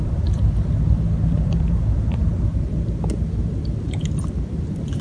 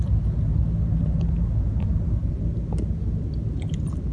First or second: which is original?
second